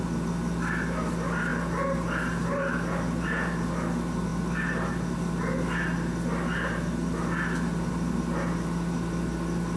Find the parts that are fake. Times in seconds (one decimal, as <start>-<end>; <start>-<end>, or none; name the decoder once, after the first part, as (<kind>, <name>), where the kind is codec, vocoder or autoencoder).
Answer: none